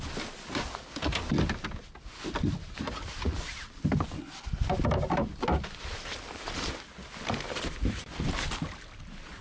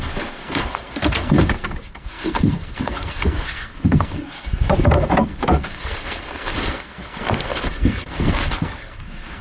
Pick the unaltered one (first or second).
first